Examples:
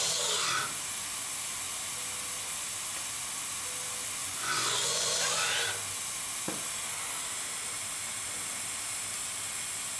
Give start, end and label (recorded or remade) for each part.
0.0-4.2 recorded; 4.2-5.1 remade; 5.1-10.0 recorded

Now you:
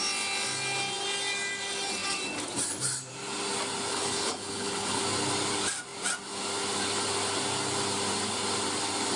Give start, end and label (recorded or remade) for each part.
0.0-3.9 recorded; 3.9-5.0 remade; 5.0-9.2 recorded

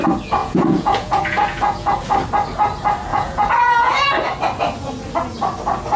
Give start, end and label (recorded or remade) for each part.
0.0-0.4 recorded; 0.4-2.0 remade; 2.0-3.1 recorded; 3.1-4.1 remade; 4.1-6.0 recorded

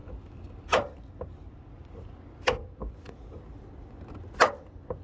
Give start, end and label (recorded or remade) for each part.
0.0-5.0 recorded

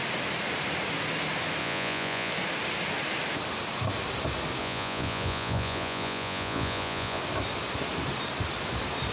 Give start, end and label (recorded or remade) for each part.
0.0-1.6 recorded; 1.6-2.3 remade; 2.3-4.6 recorded; 4.6-7.2 remade; 7.2-9.1 recorded

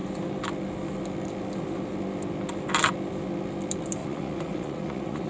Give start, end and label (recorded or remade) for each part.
0.0-4.0 recorded; 4.0-5.3 remade